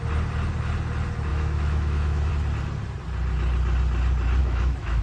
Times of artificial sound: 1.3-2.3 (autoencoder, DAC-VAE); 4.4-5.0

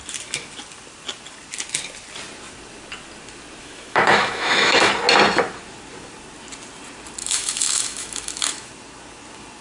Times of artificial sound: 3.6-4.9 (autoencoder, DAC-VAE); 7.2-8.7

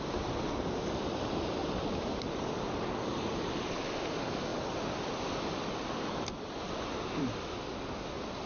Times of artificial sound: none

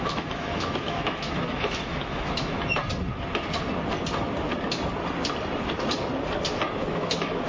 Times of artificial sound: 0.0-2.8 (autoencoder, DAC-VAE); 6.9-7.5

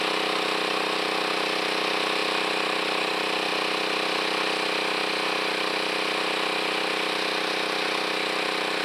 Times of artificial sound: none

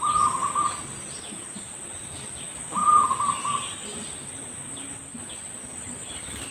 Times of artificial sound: none

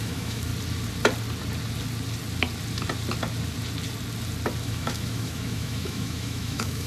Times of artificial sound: 0.0-0.5 (autoencoder, DAC-VAE); 4.6-6.9